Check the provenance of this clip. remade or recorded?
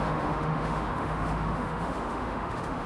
remade